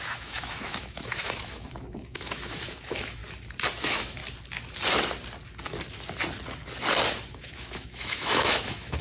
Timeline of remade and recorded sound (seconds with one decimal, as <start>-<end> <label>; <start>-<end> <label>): 0.0-3.2 remade; 3.2-3.8 recorded; 3.8-4.2 remade; 4.2-7.3 recorded; 7.3-9.0 remade